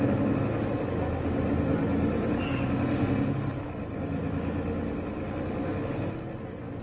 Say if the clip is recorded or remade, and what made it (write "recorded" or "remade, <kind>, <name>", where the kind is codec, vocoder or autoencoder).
recorded